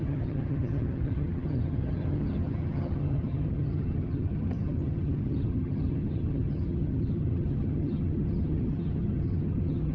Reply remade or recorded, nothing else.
remade